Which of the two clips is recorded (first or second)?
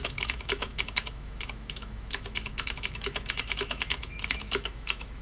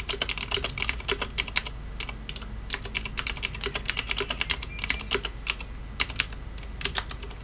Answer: second